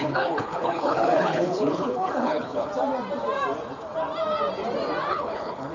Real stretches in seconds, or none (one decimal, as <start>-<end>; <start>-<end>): 2.7-5.1